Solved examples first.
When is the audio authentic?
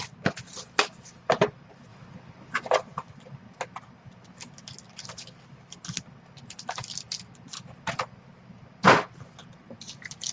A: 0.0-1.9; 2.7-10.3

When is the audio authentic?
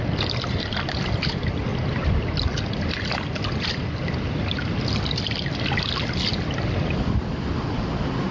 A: 0.0-1.7; 2.9-8.3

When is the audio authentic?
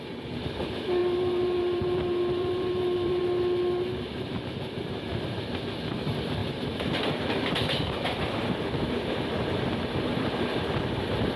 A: 0.0-1.0; 3.2-6.4; 7.5-11.4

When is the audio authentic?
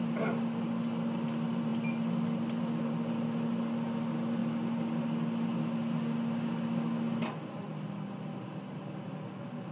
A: 0.0-9.7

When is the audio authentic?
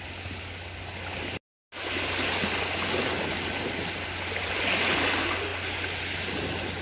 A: 0.0-6.8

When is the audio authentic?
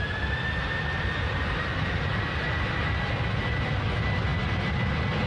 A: 2.1-3.5; 4.3-5.3